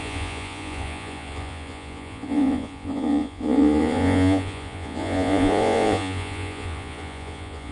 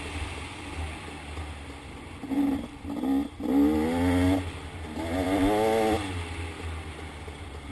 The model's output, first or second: first